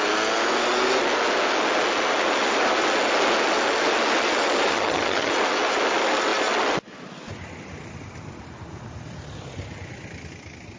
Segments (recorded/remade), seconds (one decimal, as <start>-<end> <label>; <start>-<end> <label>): 0.0-4.7 recorded; 4.7-5.3 remade; 5.3-10.8 recorded